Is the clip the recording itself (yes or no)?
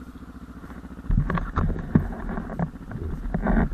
yes